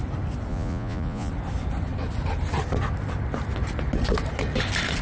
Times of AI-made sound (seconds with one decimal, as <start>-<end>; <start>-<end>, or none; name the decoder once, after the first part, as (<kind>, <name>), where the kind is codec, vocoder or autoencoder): 0.5-1.3 (vocoder, Vocos)